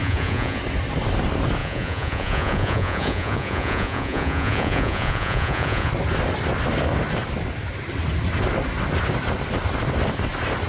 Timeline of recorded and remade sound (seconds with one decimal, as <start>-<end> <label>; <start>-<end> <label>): 0.0-0.6 remade; 0.6-1.6 recorded; 1.6-5.9 remade; 5.9-10.7 recorded